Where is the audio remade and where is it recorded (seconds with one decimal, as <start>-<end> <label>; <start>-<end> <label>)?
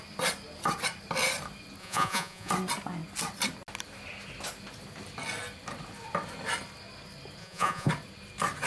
0.0-1.8 recorded; 1.8-2.5 remade; 2.5-7.4 recorded; 7.4-7.9 remade; 7.9-8.7 recorded